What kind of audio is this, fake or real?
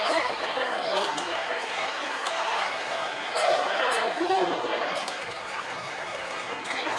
fake